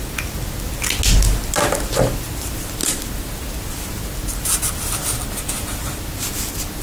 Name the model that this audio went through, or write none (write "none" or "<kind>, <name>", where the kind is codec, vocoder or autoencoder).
none